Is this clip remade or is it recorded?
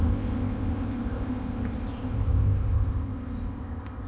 remade